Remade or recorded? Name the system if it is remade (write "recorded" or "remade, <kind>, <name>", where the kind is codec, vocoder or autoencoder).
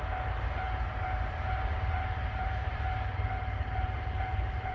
remade, vocoder, BigVGAN v2